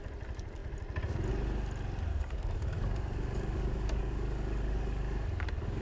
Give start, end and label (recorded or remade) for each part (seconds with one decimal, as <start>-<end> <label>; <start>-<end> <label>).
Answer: 0.0-2.1 recorded; 2.1-5.8 remade